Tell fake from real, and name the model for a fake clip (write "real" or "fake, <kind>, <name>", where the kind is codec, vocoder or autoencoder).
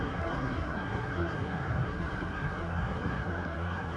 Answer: fake, codec, SNAC